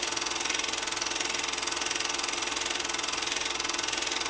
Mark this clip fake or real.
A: real